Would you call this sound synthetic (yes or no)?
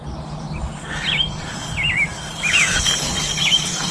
no